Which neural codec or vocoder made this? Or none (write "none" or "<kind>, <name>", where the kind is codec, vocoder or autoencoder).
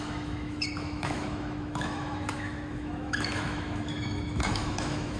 autoencoder, DAC-VAE